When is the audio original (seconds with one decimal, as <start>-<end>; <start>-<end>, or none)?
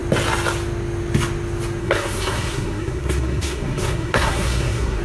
0.0-1.8